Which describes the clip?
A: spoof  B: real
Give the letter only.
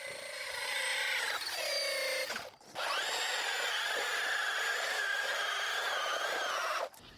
B